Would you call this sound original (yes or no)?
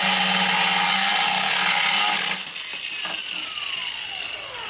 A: yes